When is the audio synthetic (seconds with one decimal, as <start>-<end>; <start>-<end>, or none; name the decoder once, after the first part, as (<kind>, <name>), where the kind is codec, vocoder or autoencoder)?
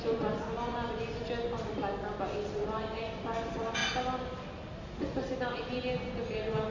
none